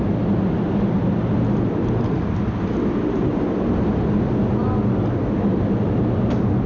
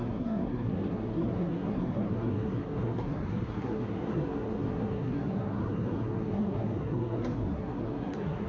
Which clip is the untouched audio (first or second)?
first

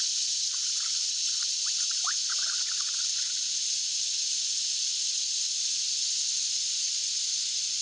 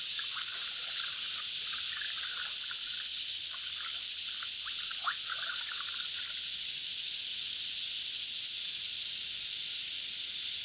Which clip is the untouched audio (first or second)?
second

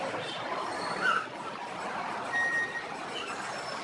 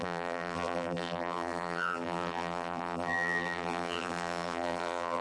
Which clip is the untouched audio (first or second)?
first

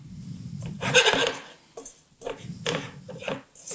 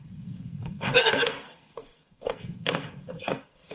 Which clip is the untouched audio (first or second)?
first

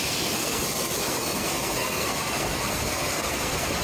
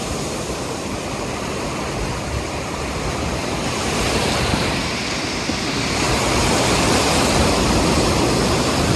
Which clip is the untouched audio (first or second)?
second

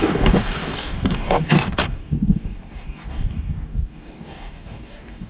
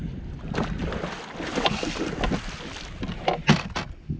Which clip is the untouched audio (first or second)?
second